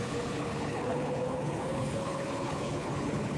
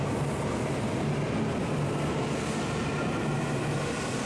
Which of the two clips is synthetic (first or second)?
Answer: first